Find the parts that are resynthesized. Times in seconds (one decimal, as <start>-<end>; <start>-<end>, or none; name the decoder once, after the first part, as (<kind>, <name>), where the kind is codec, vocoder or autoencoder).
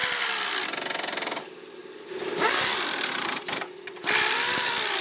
0.0-0.7 (vocoder, BigVGAN v2); 1.8-5.0